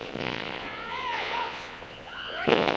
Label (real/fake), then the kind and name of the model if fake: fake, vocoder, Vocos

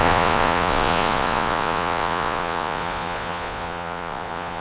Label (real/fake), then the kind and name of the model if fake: fake, vocoder, Vocos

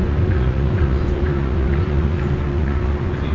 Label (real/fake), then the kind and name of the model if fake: fake, vocoder, Vocos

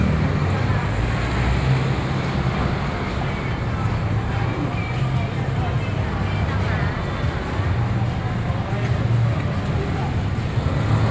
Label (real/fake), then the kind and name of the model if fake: real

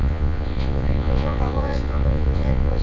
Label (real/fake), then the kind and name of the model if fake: fake, vocoder, Vocos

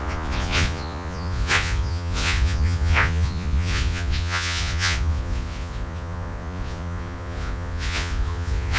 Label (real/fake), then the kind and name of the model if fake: fake, vocoder, Vocos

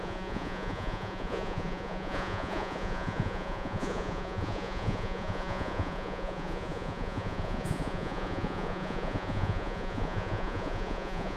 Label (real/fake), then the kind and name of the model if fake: fake, vocoder, Vocos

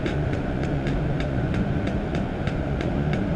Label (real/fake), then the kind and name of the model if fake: fake, vocoder, Vocos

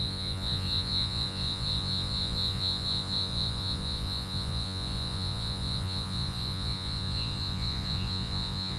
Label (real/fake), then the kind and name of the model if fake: fake, vocoder, Vocos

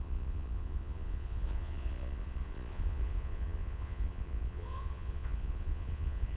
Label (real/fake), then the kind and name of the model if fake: fake, vocoder, Vocos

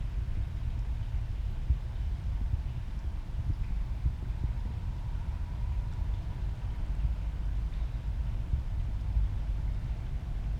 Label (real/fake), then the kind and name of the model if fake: real